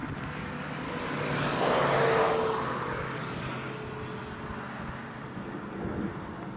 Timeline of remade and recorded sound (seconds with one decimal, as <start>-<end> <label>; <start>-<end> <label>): 0.0-1.6 remade; 1.6-2.2 recorded; 2.2-3.4 remade; 3.4-6.6 recorded